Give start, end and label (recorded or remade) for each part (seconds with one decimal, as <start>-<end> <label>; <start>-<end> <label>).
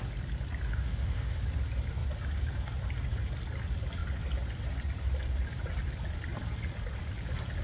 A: 0.0-0.7 recorded; 0.7-1.4 remade; 1.4-7.6 recorded